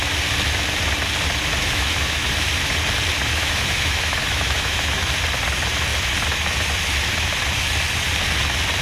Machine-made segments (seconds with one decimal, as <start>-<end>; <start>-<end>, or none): 1.6-2.5; 3.3-5.1

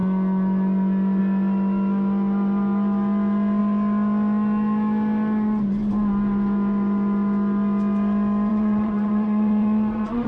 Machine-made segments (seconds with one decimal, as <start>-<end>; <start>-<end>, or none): 8.5-10.3

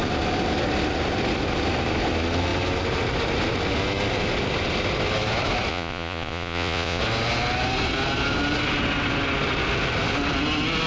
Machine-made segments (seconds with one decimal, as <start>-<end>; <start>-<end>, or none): 5.7-7.0